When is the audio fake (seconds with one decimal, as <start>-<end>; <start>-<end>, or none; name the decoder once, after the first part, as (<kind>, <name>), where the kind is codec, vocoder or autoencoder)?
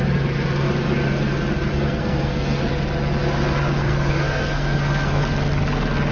1.7-2.6 (codec, SNAC); 3.8-5.2